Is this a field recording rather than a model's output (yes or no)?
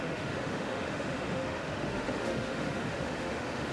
no